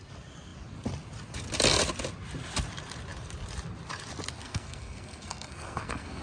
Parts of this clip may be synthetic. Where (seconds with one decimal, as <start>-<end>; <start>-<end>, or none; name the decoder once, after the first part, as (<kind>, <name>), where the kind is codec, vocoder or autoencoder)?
4.4-6.2 (codec, SNAC)